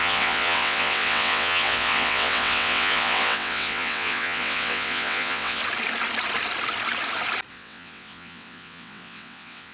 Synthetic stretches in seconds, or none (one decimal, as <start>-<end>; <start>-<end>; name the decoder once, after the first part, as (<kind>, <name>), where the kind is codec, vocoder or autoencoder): 0.0-5.6 (vocoder, WaveNeXt); 7.5-9.7